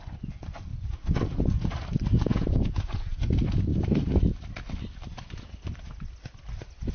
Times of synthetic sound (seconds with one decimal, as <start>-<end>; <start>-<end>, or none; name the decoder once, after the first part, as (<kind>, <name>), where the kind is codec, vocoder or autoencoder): 0.7-1.7 (vocoder, Vocos); 2.3-3.3